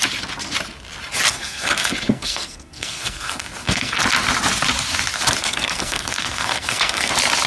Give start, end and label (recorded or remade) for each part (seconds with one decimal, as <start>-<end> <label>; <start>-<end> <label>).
0.0-1.3 recorded; 1.3-4.0 remade; 4.0-5.4 recorded; 5.4-7.1 remade; 7.1-7.5 recorded